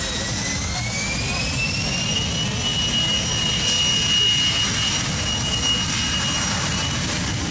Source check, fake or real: real